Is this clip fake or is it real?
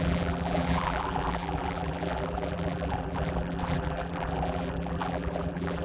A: fake